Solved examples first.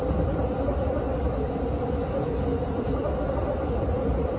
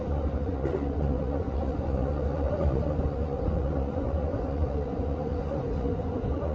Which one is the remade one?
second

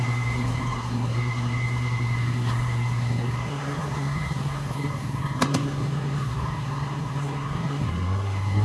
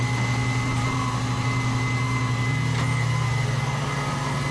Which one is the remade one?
first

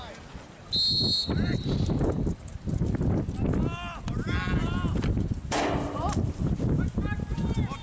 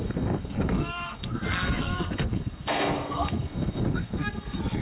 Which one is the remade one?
second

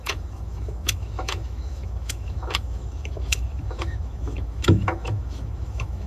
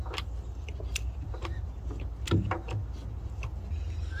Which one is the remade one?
first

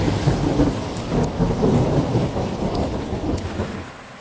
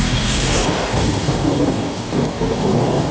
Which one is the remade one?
second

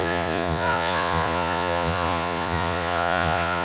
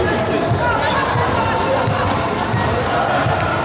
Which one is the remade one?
first